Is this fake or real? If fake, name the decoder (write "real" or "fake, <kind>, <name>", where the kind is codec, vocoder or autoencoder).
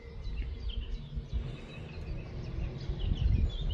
real